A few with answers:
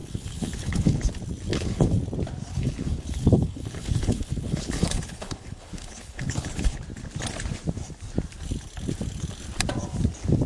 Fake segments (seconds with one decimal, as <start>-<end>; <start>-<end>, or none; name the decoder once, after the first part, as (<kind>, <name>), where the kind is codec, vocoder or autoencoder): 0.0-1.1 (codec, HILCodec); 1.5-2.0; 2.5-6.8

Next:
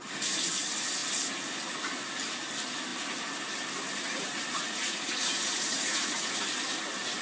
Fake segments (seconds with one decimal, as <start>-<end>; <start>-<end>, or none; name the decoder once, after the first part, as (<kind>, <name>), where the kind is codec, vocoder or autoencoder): 4.5-6.4 (vocoder, Vocos)

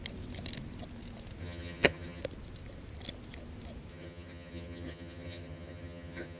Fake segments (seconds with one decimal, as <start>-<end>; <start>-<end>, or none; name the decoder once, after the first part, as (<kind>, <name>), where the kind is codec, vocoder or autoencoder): 1.4-2.2 (vocoder, HiFi-GAN); 3.9-6.4

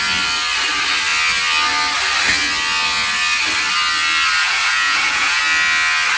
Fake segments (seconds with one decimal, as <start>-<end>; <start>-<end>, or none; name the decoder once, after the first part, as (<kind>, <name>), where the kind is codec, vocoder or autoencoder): 4.4-5.4 (vocoder, Vocos)

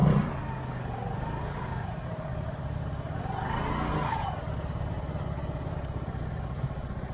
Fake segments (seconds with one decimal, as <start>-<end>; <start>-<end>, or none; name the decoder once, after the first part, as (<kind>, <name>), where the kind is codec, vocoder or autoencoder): none

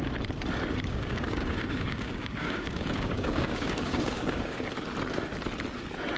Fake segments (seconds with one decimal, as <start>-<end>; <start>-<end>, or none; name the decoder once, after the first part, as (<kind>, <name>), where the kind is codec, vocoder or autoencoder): 0.9-4.6 (codec, DAC)